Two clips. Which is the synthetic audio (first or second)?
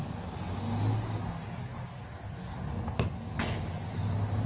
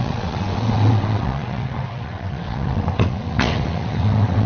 second